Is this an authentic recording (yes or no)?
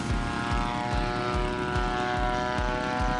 yes